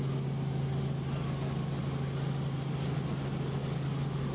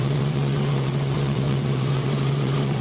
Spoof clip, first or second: second